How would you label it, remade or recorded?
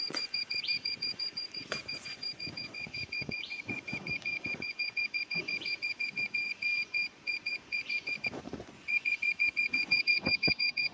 remade